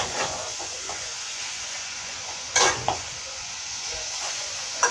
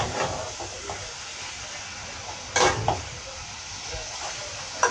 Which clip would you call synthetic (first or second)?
first